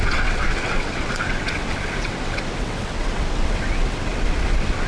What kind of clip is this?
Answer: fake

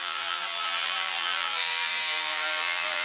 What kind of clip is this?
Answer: fake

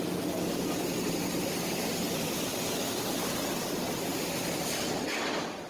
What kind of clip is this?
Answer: real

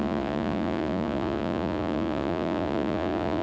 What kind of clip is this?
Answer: fake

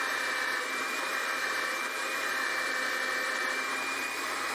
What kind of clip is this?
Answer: fake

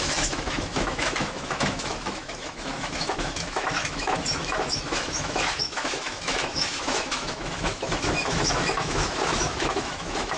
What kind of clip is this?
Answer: fake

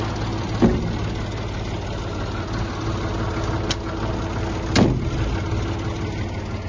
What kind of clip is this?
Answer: real